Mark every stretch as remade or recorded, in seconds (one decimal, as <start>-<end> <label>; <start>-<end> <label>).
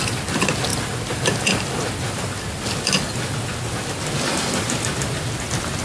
0.0-5.8 recorded